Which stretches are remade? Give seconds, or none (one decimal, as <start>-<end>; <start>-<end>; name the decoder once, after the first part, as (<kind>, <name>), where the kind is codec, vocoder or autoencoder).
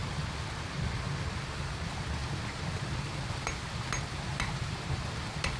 none